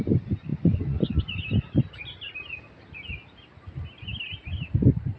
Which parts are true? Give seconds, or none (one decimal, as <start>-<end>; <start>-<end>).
0.0-0.5; 1.4-5.2